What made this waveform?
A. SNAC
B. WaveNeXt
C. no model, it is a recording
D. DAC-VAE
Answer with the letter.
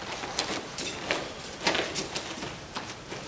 C